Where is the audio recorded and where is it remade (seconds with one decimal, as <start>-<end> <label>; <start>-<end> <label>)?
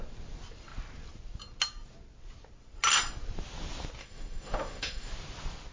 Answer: 0.0-4.0 recorded; 4.0-5.1 remade; 5.1-5.7 recorded